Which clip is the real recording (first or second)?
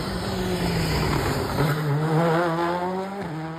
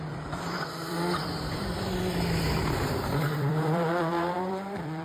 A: first